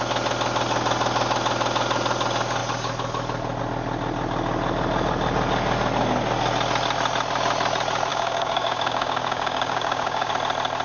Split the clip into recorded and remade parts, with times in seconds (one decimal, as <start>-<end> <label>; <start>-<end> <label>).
0.0-8.1 recorded; 8.1-10.3 remade; 10.3-10.8 recorded